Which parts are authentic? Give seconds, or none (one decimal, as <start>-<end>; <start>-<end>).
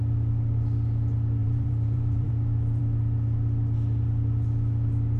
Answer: 0.0-1.4; 2.3-5.2